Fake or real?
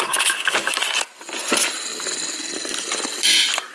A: real